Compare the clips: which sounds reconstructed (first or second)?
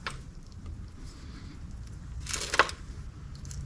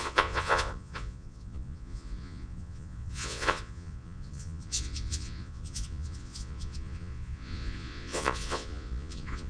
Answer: second